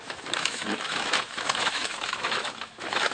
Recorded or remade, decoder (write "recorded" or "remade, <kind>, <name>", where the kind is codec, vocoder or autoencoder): remade, autoencoder, DAC-VAE